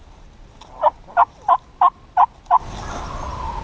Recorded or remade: recorded